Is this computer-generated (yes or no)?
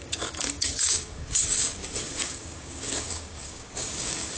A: yes